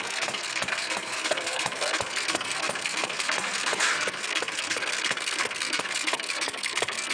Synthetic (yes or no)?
yes